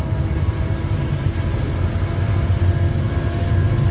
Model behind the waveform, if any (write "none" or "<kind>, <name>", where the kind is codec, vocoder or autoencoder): none